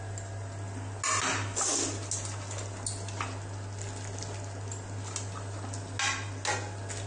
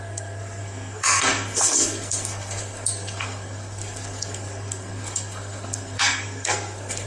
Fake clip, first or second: second